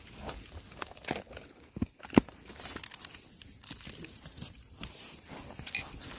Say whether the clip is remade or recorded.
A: recorded